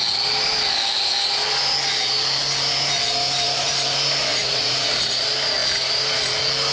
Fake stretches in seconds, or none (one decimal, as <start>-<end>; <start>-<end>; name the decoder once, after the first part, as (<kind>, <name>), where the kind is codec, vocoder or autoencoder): 4.3-4.9 (vocoder, Vocos)